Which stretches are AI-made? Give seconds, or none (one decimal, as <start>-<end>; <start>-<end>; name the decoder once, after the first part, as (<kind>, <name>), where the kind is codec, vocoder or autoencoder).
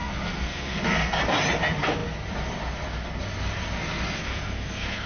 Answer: 0.0-1.2 (codec, SNAC); 4.2-5.1